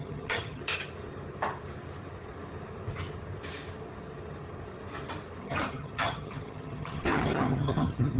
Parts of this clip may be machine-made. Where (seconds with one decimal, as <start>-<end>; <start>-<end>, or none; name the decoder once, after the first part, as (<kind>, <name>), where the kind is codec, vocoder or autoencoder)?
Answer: 0.0-0.6 (vocoder, HiFi-GAN); 5.4-8.2